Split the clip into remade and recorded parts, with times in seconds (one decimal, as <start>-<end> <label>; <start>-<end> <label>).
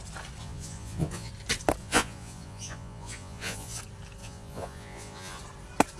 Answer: 0.0-0.4 recorded; 0.4-1.3 remade; 1.3-1.8 recorded; 1.8-3.8 remade; 3.8-4.2 recorded; 4.2-5.4 remade; 5.4-6.0 recorded